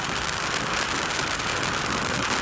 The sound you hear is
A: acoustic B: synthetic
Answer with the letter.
B